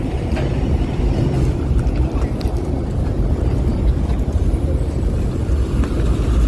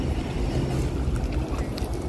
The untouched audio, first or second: second